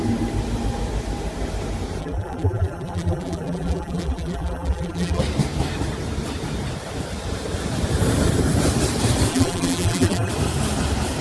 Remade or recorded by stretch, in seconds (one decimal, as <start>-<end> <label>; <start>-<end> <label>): 0.0-2.0 recorded; 2.0-5.2 remade; 5.2-9.3 recorded; 9.3-10.3 remade; 10.3-11.2 recorded